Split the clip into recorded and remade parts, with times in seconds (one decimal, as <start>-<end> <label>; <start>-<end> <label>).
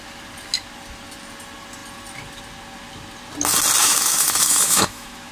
0.0-3.8 recorded; 3.8-5.3 remade